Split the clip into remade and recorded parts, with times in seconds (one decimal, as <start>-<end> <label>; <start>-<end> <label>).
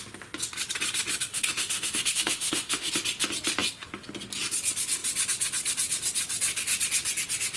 0.0-1.3 recorded; 1.3-2.9 remade; 2.9-7.6 recorded